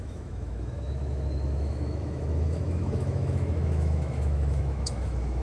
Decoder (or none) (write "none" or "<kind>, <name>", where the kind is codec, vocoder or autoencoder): autoencoder, DAC-VAE